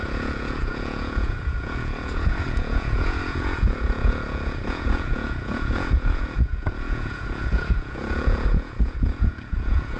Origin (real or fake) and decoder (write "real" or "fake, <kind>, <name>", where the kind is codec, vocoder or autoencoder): fake, vocoder, Vocos